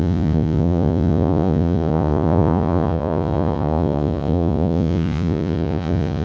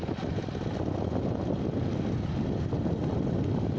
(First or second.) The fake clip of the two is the first